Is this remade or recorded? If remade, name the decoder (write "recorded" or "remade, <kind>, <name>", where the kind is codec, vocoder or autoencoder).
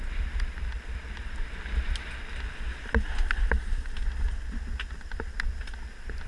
recorded